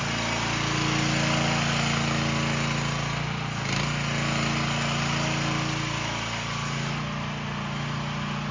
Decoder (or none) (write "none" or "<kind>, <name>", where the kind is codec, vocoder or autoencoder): none